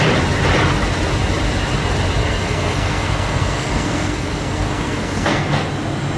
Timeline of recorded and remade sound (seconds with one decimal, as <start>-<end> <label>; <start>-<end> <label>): 0.0-2.2 recorded; 2.2-5.7 remade; 5.7-6.2 recorded